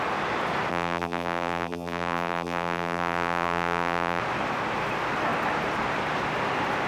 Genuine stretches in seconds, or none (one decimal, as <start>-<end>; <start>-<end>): 0.0-0.7; 4.2-6.9